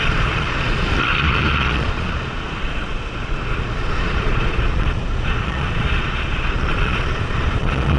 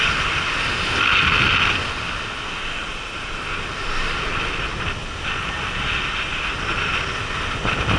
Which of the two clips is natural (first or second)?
second